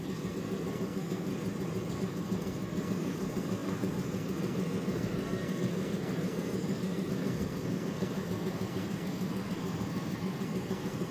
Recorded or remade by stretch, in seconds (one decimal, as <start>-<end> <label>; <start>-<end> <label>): 0.0-1.3 remade; 1.3-1.9 recorded; 1.9-11.1 remade